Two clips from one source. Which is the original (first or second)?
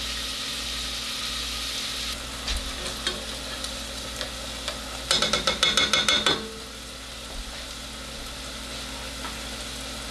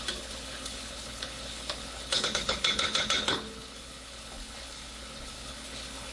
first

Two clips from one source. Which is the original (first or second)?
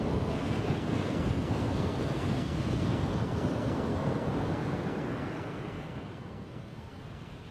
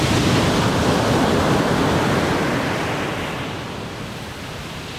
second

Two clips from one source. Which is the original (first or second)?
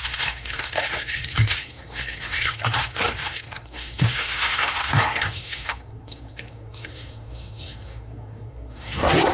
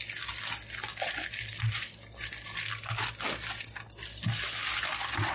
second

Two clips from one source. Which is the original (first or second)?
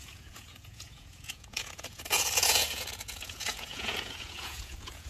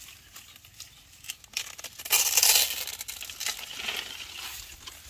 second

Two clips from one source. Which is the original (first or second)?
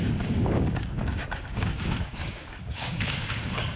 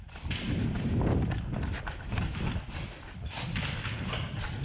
second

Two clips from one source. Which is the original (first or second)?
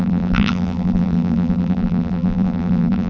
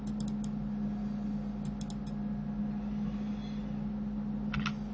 second